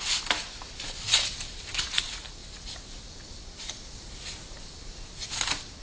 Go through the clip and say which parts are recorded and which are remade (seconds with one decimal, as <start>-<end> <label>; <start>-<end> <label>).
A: 0.0-5.8 recorded